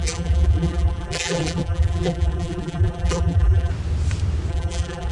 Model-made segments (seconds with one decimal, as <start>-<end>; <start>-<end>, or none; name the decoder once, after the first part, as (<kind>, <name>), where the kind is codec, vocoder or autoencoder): 0.0-3.7 (vocoder, BigVGAN v2); 4.5-5.1

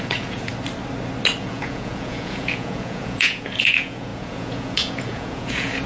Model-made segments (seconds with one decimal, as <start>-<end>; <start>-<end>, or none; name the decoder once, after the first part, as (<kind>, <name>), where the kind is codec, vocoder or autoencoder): 0.0-0.5 (vocoder, Vocos); 1.4-5.9

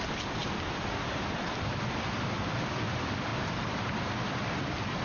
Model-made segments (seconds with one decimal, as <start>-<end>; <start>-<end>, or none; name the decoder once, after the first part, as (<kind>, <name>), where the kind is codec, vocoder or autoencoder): 3.3-4.0 (vocoder, BigVGAN v2)

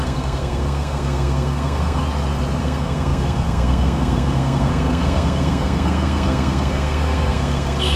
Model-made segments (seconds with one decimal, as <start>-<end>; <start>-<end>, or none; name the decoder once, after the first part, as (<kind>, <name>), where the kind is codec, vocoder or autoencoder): 0.0-2.0 (codec, SNAC); 2.6-8.0